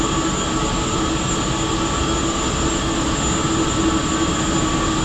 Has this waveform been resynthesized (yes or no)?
no